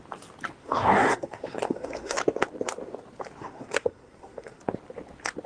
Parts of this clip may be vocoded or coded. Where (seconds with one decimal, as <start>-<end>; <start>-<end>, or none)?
0.6-2.2; 3.4-4.6